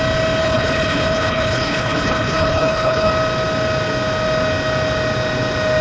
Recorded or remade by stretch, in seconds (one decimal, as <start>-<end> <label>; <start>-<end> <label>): 0.0-0.4 recorded; 0.4-3.1 remade; 3.1-5.8 recorded